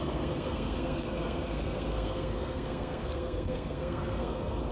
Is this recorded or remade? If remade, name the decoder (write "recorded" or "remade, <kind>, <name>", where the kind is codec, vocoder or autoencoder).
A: remade, codec, SNAC